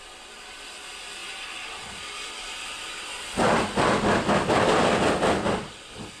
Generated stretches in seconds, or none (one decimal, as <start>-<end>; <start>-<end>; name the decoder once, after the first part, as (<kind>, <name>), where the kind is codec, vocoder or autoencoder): none